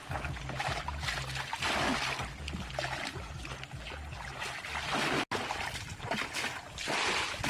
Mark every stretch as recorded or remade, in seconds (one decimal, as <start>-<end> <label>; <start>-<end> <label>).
0.0-7.5 recorded